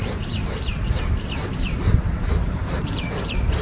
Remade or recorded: remade